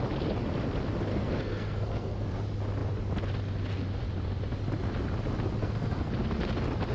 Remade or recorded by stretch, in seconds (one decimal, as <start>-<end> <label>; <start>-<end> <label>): 0.0-1.1 recorded; 1.1-2.4 remade; 2.4-5.6 recorded; 5.6-6.1 remade; 6.1-6.9 recorded